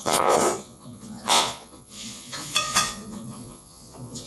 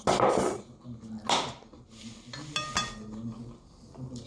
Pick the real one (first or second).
second